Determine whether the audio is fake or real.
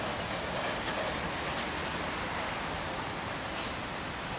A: real